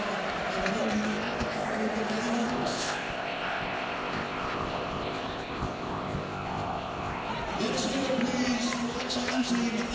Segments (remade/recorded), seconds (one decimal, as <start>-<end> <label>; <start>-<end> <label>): 0.0-0.8 recorded; 0.8-1.7 remade; 1.7-2.4 recorded; 2.4-7.3 remade; 7.3-9.0 recorded; 9.0-9.5 remade; 9.5-9.9 recorded